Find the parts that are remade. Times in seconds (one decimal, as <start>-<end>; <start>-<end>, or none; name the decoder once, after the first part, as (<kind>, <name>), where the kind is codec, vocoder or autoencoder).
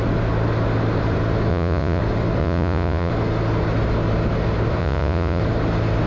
1.5-2.0 (vocoder, Vocos); 2.4-3.1; 4.8-5.4